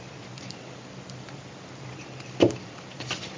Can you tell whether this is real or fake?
real